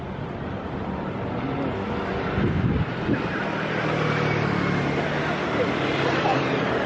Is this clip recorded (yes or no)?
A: yes